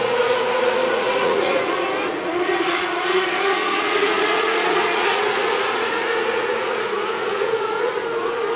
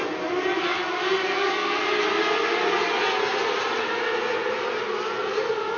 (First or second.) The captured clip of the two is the second